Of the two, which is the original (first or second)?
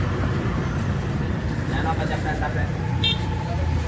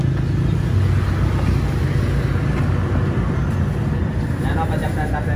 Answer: second